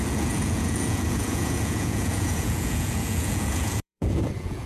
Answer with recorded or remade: remade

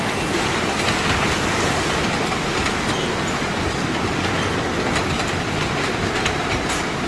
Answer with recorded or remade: recorded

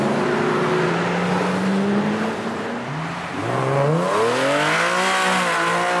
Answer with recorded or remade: recorded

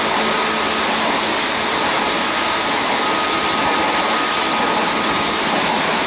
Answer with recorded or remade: recorded